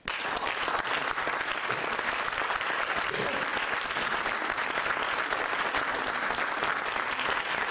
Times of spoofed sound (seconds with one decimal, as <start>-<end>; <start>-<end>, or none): none